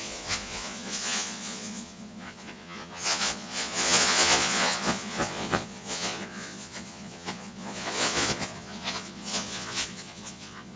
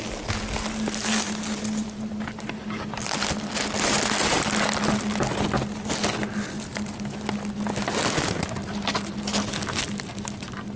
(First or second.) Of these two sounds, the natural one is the second